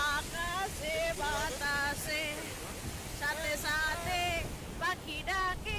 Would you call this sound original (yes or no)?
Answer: yes